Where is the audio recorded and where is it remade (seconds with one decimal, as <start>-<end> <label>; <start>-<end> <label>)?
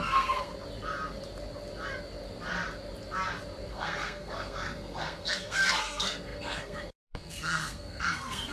0.0-0.5 remade; 0.5-3.7 recorded; 3.7-8.5 remade